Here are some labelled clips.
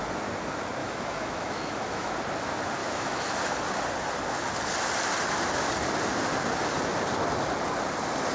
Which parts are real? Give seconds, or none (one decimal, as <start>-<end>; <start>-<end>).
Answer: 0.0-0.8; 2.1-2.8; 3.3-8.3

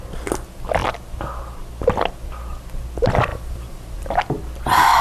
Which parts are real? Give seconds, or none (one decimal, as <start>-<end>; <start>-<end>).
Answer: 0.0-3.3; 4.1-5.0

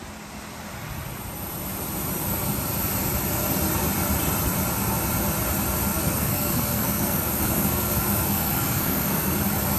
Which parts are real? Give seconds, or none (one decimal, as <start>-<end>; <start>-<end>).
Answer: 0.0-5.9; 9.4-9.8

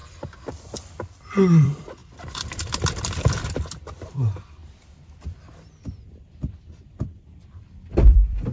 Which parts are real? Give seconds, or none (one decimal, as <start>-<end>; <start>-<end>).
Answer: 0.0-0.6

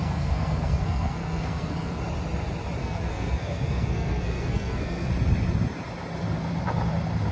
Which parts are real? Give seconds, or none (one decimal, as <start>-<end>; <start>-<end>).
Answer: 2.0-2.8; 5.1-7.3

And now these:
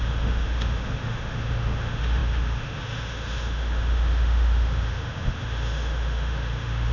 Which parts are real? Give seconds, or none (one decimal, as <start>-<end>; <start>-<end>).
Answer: none

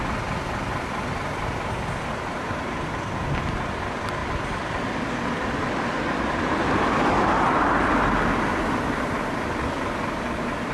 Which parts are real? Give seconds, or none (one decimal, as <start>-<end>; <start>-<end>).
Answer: 0.0-10.7

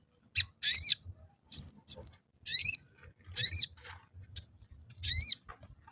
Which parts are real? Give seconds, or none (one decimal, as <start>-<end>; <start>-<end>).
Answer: 0.0-0.9; 2.0-5.9